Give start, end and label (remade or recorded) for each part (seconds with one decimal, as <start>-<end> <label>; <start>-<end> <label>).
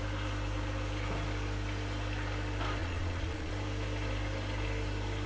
0.0-2.8 recorded; 2.8-3.5 remade; 3.5-5.3 recorded